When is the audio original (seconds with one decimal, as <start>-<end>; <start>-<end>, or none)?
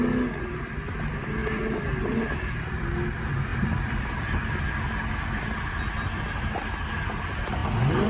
0.0-8.1